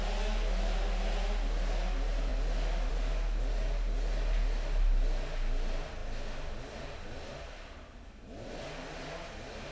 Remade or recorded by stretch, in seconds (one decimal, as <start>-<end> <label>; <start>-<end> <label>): 0.0-9.7 recorded